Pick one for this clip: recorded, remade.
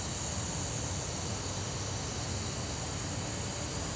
recorded